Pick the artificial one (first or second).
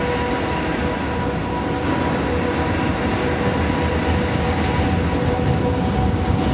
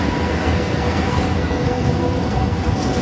second